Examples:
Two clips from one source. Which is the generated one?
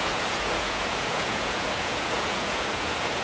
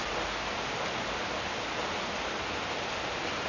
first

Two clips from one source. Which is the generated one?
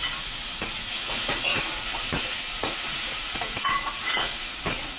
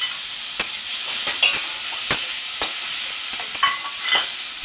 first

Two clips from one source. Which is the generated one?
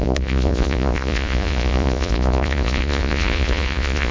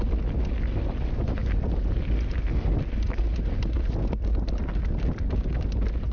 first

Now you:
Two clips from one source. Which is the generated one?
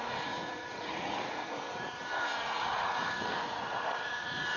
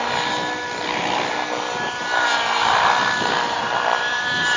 first